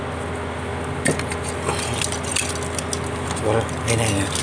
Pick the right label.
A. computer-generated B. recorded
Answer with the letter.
B